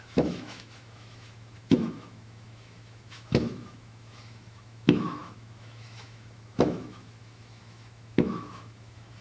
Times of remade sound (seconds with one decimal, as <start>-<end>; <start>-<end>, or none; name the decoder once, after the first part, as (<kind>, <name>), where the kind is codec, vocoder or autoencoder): 0.0-9.2 (autoencoder, DAC-VAE)